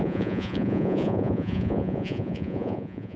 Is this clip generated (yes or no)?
yes